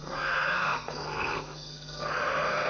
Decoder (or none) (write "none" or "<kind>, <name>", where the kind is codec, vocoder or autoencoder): codec, SNAC